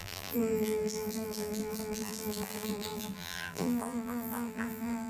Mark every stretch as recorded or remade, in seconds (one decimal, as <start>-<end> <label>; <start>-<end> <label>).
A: 0.0-5.1 remade